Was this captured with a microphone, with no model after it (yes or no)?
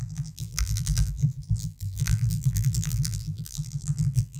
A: no